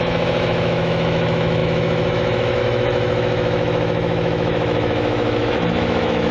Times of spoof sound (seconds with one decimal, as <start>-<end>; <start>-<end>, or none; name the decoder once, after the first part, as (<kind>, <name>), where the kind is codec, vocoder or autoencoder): 0.0-6.3 (autoencoder, DAC-VAE)